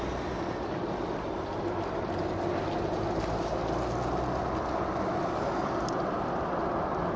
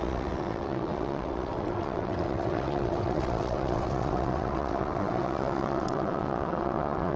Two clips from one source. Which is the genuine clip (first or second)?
first